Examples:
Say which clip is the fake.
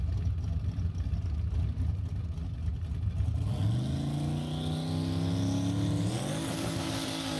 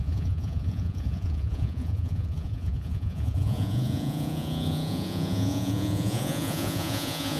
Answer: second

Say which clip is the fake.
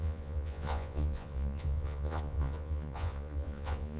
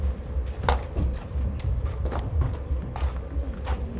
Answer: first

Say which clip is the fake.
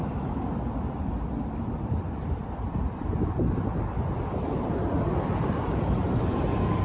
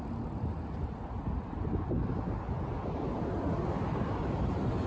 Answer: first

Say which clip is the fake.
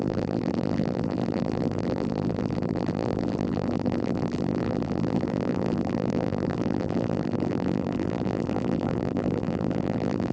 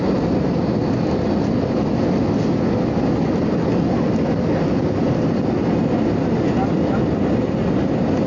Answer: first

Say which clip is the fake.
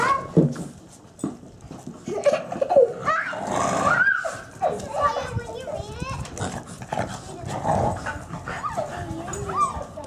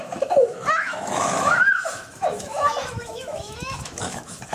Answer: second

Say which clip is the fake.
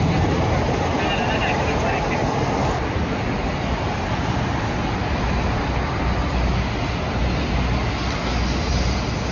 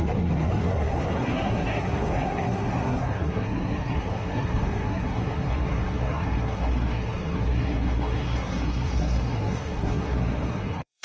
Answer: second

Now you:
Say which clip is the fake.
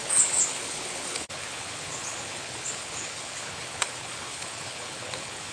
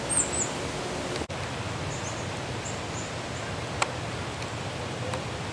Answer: first